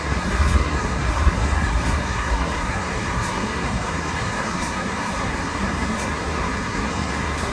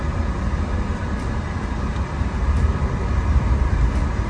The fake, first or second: first